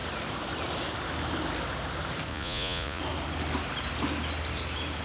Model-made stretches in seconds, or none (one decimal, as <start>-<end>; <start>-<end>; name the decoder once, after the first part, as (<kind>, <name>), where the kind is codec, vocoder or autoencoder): 2.3-3.0 (vocoder, Vocos)